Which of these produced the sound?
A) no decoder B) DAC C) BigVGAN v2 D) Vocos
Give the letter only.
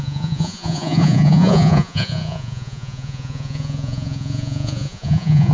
D